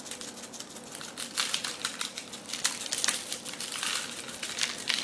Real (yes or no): yes